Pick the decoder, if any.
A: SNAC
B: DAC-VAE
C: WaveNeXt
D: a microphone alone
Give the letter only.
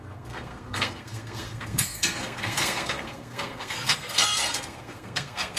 A